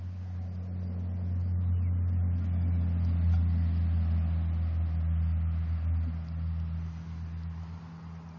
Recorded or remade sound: recorded